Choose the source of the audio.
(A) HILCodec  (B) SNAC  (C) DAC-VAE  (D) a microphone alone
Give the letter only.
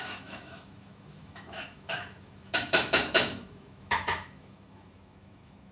C